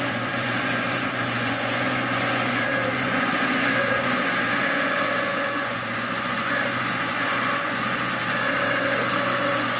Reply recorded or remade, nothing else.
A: remade